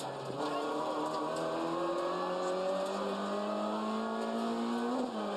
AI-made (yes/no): no